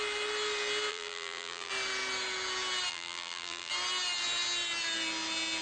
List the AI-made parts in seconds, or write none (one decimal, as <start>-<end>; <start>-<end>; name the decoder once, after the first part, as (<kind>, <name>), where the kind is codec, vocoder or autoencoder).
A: 0.9-1.7 (vocoder, BigVGAN v2); 2.9-3.7